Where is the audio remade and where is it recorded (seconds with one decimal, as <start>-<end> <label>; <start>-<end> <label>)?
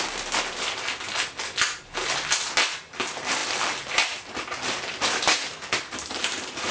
0.0-6.7 recorded